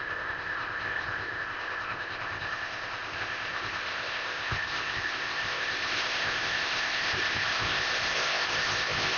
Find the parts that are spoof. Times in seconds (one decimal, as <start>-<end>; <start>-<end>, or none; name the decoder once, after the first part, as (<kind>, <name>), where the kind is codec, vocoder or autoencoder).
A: 0.0-9.2 (codec, ZipCodec)